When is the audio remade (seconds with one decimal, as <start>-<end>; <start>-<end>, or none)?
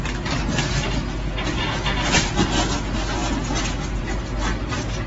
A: none